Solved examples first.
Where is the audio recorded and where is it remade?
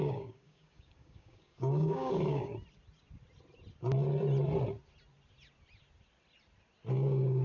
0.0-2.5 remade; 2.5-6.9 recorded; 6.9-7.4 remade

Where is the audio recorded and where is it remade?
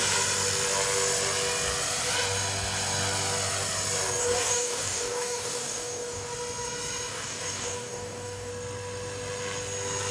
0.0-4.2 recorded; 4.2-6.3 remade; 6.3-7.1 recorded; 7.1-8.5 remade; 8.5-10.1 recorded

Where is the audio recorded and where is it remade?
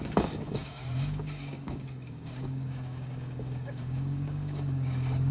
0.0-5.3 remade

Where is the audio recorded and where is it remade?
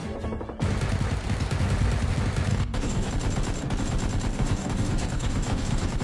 0.0-2.5 recorded; 2.5-3.1 remade; 3.1-4.3 recorded; 4.3-6.0 remade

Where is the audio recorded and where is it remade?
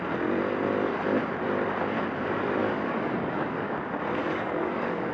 0.0-2.6 recorded; 2.6-3.8 remade; 3.8-4.2 recorded; 4.2-5.1 remade